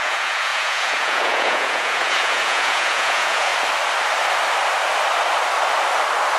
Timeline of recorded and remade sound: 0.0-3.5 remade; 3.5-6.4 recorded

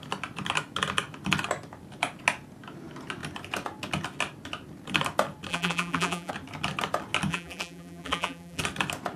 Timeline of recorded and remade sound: 0.0-5.5 recorded; 5.5-6.3 remade; 6.3-7.3 recorded; 7.3-8.6 remade; 8.6-9.2 recorded

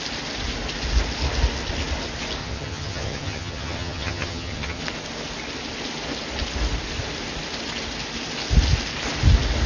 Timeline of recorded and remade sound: 0.0-2.4 recorded; 2.4-4.8 remade; 4.8-9.7 recorded

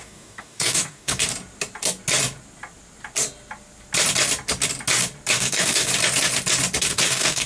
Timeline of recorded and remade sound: 0.0-1.3 remade; 1.3-5.3 recorded; 5.3-5.9 remade; 5.9-6.8 recorded; 6.8-7.5 remade

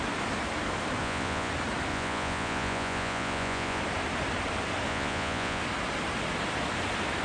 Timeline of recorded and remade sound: 0.0-1.0 recorded; 1.0-1.5 remade; 1.5-1.9 recorded; 1.9-3.8 remade; 3.8-4.9 recorded; 4.9-5.6 remade; 5.6-7.2 recorded